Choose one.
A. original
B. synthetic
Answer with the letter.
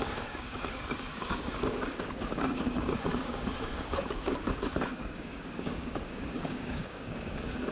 B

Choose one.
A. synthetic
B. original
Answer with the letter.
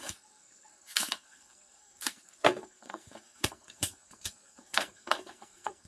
A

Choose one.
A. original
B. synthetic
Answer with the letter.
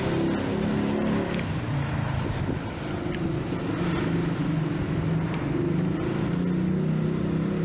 A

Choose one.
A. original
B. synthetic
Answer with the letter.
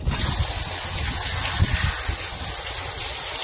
A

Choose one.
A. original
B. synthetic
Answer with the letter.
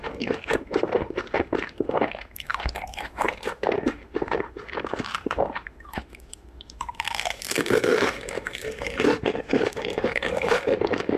B